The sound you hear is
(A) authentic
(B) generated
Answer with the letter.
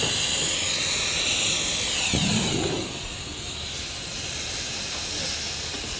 A